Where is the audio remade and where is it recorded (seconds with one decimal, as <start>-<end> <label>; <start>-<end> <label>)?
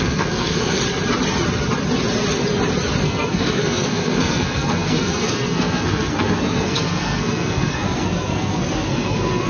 0.0-0.8 remade; 0.8-3.0 recorded; 3.0-9.5 remade